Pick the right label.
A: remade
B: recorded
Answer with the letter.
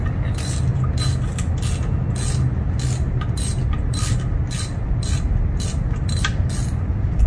B